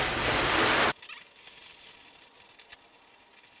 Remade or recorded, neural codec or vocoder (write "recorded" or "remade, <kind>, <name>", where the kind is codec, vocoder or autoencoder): recorded